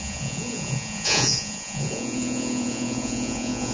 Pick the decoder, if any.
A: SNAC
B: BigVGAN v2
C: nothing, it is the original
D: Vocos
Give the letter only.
D